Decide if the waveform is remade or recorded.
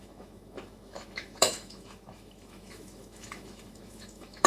remade